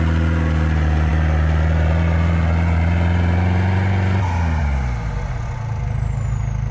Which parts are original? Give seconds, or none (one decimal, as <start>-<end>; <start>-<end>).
0.0-6.7